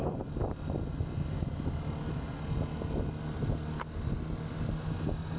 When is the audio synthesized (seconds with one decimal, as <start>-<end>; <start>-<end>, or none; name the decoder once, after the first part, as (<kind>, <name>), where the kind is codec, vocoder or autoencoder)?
none